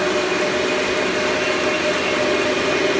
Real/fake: real